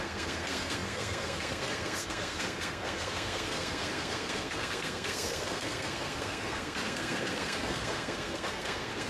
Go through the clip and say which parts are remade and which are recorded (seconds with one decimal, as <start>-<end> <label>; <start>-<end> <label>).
0.0-9.1 remade